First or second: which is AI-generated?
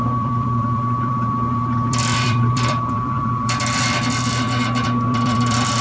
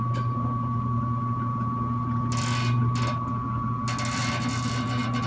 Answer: first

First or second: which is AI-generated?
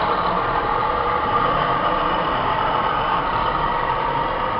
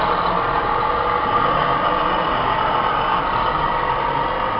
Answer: first